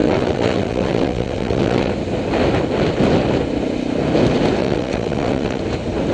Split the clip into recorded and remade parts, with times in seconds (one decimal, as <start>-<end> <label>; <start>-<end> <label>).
0.0-1.9 remade; 1.9-4.6 recorded; 4.6-5.6 remade; 5.6-6.1 recorded